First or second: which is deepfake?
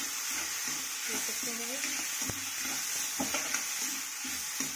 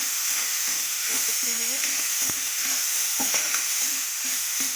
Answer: second